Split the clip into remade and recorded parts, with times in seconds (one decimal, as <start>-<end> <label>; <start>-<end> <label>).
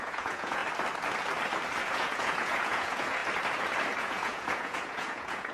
0.0-0.6 remade; 0.6-1.9 recorded; 1.9-3.2 remade; 3.2-4.0 recorded; 4.0-5.5 remade